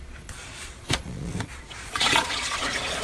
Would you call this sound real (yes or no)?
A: no